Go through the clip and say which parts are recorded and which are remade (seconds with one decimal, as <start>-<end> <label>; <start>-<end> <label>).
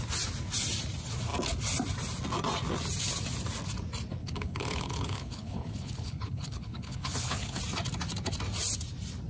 0.0-4.2 recorded; 4.2-7.6 remade; 7.6-9.3 recorded